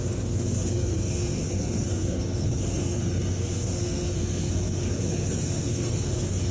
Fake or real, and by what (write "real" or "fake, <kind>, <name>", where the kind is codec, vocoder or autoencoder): fake, codec, SNAC